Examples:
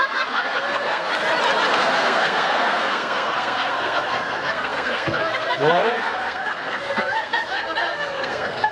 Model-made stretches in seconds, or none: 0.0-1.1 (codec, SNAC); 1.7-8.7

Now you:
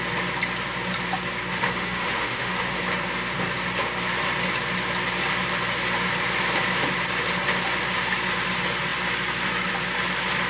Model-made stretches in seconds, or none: 1.6-2.8 (autoencoder, DAC-VAE)

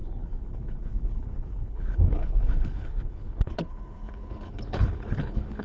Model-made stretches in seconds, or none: 0.0-5.6 (codec, HILCodec)

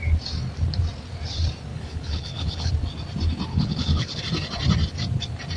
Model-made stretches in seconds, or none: 1.7-2.7 (codec, HILCodec); 3.5-4.2

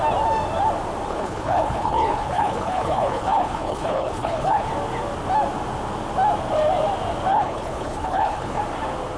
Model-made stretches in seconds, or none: 1.1-4.7 (codec, HILCodec); 7.3-8.6

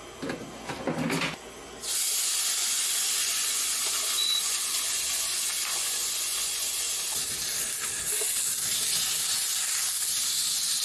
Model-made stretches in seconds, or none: 2.6-6.9 (vocoder, Vocos)